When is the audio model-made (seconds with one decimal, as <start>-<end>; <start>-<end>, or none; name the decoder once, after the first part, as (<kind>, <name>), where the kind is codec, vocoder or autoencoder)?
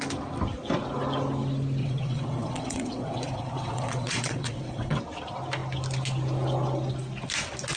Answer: 1.8-5.0 (vocoder, WaveNeXt)